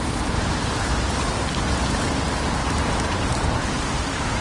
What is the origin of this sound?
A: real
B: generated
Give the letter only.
B